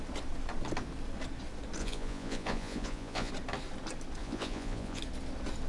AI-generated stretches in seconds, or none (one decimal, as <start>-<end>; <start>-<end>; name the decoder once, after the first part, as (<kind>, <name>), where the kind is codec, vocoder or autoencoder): 1.8-3.3 (vocoder, Vocos); 4.2-5.0